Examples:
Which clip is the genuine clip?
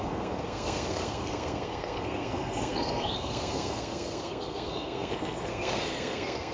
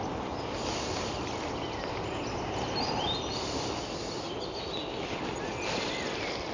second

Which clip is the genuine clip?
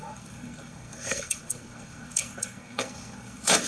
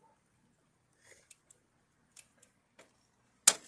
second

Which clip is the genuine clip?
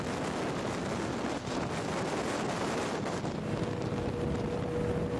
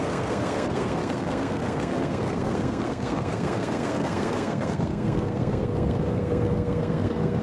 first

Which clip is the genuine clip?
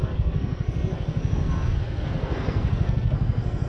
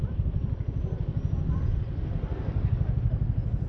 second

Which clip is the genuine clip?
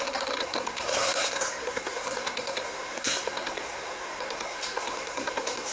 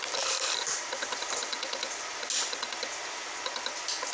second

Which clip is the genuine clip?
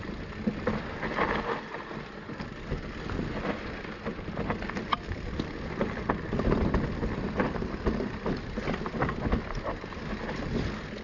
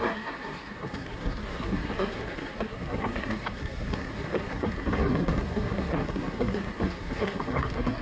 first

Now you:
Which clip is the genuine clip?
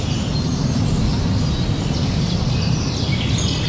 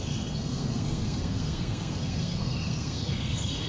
first